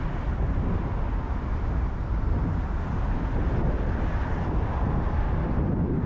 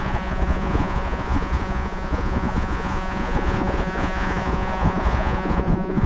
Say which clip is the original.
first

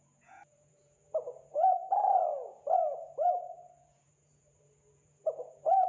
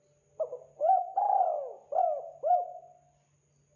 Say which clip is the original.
second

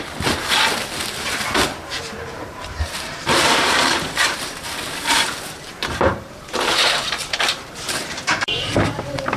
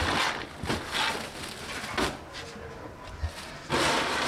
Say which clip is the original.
second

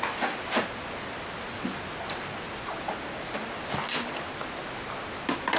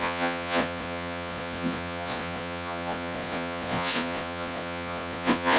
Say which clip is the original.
first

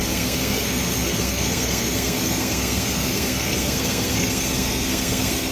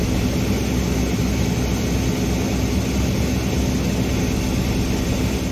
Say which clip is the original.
second